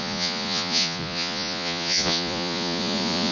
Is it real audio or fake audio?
fake